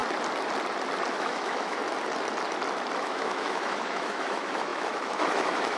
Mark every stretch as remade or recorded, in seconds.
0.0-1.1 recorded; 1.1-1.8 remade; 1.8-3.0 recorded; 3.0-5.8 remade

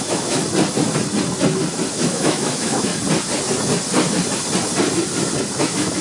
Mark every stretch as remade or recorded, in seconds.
0.0-0.4 remade; 0.4-1.9 recorded; 1.9-2.9 remade; 2.9-5.6 recorded; 5.6-6.0 remade

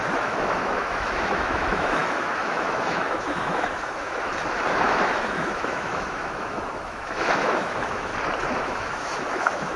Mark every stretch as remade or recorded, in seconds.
0.0-4.3 remade; 4.3-5.1 recorded; 5.1-8.1 remade; 8.1-8.6 recorded; 8.6-9.8 remade

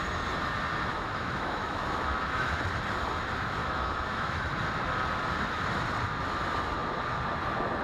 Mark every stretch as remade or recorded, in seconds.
0.0-0.9 recorded; 0.9-2.6 remade; 2.6-3.6 recorded; 3.6-4.5 remade; 4.5-7.8 recorded

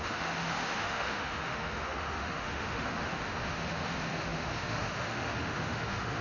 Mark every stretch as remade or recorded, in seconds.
0.0-6.2 remade

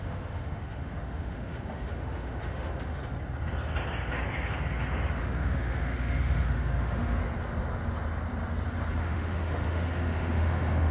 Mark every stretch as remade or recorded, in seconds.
0.0-3.0 remade; 3.0-5.2 recorded; 5.2-7.2 remade; 7.2-9.0 recorded; 9.0-10.9 remade

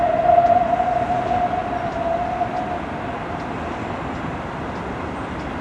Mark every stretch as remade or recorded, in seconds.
0.0-5.6 recorded